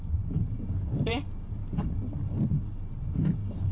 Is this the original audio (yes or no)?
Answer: no